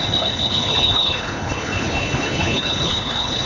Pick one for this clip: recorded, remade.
remade